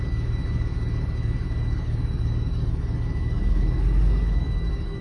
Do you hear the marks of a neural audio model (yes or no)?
yes